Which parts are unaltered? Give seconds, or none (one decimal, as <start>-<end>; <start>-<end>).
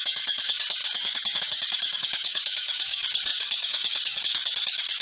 none